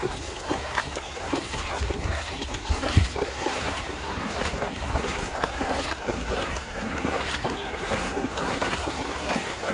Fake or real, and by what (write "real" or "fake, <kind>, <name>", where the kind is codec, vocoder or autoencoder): fake, codec, SNAC